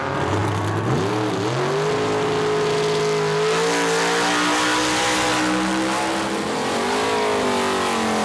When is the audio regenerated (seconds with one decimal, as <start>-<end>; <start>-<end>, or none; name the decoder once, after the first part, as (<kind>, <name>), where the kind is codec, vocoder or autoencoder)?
none